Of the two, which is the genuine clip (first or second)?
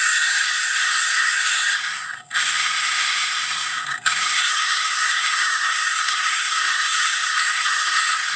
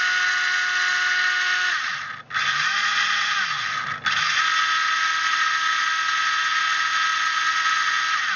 second